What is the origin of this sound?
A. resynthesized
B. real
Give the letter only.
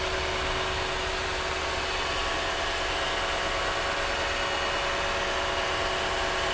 B